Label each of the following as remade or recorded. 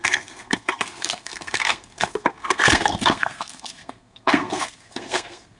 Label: remade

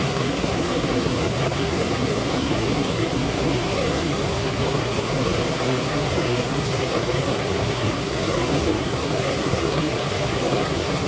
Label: remade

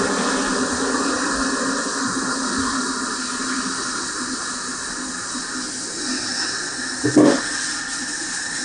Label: recorded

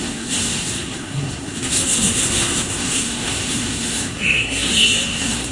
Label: remade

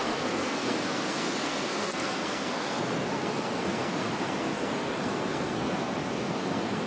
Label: remade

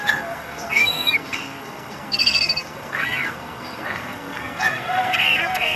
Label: remade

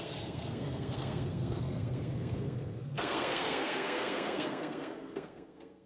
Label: remade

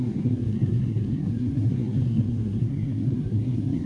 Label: remade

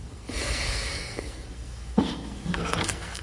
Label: remade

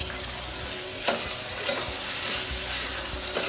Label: recorded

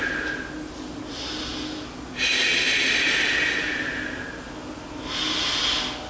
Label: recorded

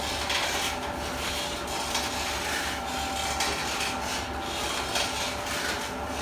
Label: recorded